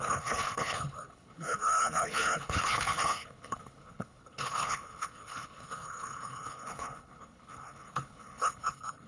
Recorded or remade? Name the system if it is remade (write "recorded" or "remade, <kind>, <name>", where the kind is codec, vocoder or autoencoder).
remade, codec, HILCodec